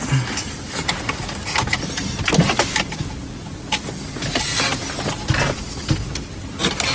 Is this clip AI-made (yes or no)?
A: no